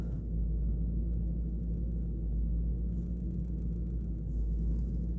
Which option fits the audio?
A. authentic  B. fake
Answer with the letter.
A